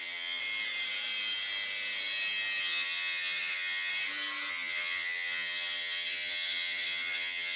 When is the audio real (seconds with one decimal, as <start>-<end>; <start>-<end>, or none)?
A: 0.4-2.6; 3.9-4.5